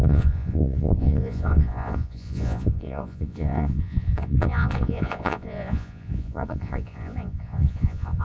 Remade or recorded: remade